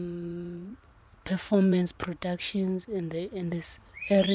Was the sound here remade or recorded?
remade